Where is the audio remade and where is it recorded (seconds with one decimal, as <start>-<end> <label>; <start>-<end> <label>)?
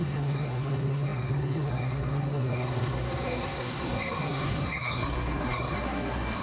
0.0-6.4 remade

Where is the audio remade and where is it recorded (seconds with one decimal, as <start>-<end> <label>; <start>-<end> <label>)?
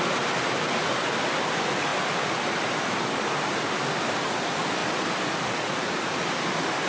0.0-6.9 recorded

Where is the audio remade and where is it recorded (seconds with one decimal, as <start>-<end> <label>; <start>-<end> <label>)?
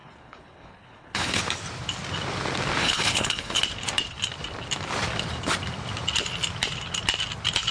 0.0-1.4 remade; 1.4-2.8 recorded; 2.8-3.6 remade; 3.6-7.7 recorded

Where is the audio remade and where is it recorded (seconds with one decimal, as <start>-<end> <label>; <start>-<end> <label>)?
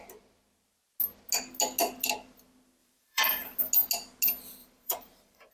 0.0-2.8 recorded; 2.8-3.6 remade; 3.6-4.6 recorded; 4.6-5.5 remade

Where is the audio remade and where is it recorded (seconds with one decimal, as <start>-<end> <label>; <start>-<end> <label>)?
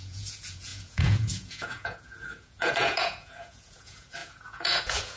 0.0-5.2 remade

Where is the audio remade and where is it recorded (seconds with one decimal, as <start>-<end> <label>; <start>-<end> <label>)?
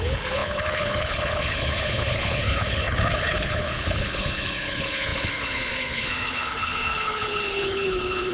0.0-8.3 remade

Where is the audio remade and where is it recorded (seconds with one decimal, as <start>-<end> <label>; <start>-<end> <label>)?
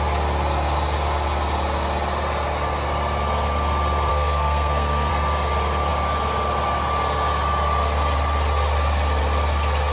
0.0-4.1 recorded; 4.1-5.1 remade; 5.1-9.9 recorded